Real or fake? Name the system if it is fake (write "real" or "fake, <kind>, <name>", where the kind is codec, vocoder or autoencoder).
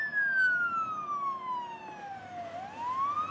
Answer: real